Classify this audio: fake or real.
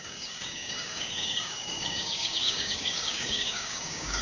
fake